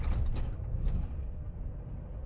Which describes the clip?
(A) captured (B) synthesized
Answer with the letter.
A